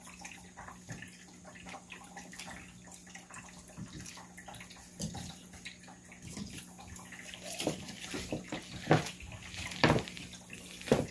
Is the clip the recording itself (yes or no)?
yes